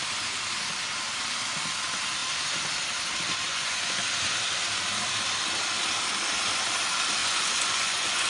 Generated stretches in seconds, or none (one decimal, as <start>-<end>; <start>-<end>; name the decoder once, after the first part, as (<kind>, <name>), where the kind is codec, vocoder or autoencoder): 3.5-4.1 (vocoder, Vocos); 7.2-8.3